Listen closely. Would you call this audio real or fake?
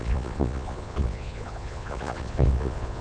fake